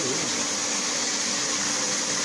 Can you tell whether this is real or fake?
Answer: real